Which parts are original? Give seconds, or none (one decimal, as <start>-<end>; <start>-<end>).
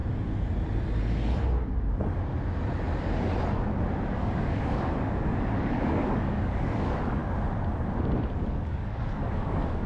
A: 0.0-4.1; 7.2-8.4